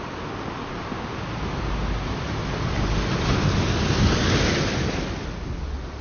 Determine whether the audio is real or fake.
real